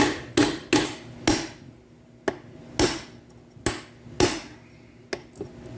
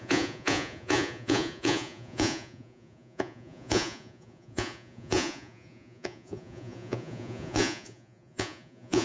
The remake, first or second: second